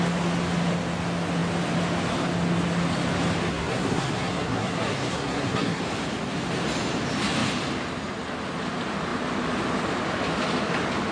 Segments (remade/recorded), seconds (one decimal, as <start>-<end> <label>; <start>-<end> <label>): 0.0-3.5 recorded; 3.5-5.8 remade; 5.8-11.1 recorded